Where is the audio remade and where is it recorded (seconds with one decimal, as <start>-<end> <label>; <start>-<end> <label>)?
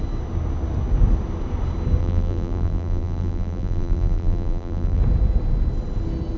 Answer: 0.0-2.0 recorded; 2.0-5.0 remade; 5.0-6.4 recorded